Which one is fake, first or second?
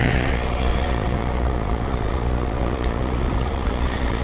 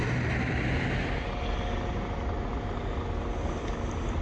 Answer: first